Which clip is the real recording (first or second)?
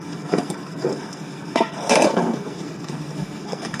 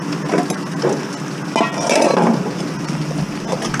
second